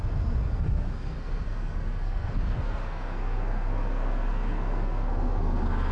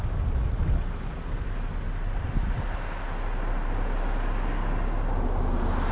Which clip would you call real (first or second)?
second